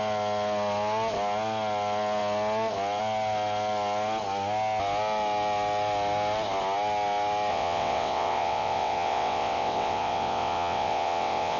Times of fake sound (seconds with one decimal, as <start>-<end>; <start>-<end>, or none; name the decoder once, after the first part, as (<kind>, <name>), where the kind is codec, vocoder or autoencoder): 7.5-11.6 (vocoder, WaveNeXt)